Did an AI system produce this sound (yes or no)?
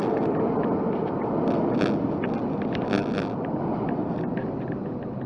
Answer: no